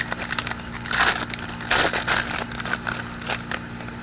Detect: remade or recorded recorded